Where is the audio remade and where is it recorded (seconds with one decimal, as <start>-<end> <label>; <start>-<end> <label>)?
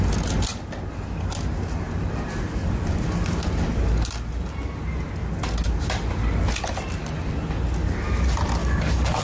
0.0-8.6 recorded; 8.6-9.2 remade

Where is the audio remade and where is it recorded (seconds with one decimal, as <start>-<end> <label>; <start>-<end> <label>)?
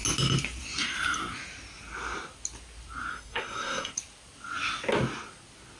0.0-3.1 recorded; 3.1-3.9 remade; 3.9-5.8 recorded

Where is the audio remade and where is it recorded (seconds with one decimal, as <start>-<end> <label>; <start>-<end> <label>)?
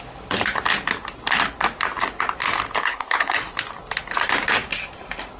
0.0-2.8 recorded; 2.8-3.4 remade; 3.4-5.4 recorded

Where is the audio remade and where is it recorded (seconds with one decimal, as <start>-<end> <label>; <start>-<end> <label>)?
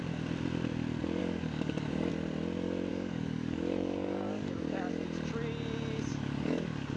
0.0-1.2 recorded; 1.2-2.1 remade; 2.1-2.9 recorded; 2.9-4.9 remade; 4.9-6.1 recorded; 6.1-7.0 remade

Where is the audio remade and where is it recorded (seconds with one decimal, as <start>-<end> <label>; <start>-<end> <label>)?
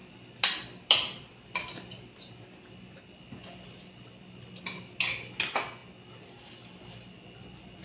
0.0-7.8 recorded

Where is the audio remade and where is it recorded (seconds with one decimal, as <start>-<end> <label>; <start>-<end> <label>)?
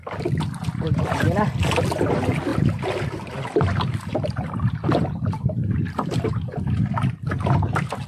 0.0-8.1 recorded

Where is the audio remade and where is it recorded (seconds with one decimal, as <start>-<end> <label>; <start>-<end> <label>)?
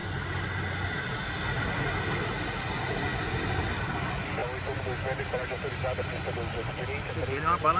0.0-7.8 recorded